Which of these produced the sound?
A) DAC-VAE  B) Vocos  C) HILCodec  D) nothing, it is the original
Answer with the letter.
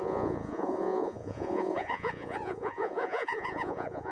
B